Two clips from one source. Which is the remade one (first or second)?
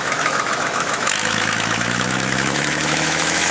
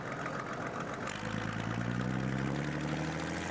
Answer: first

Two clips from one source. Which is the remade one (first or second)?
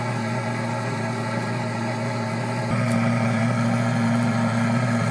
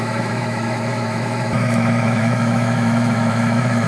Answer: second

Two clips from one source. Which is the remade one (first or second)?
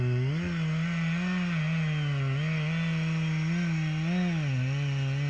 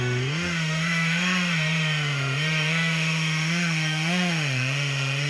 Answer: second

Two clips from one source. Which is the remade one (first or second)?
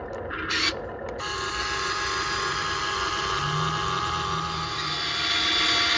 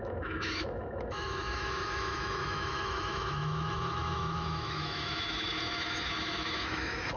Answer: second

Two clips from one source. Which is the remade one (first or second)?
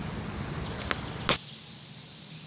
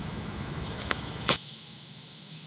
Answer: second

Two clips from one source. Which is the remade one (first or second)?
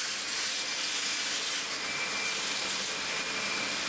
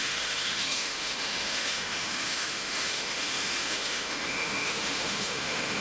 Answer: second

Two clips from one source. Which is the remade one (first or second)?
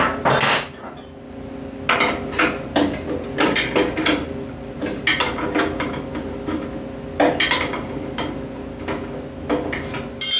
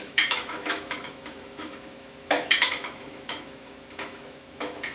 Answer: second